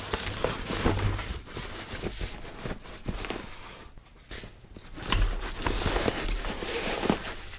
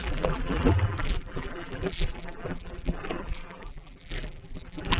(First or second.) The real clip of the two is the first